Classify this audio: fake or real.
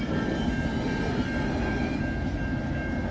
real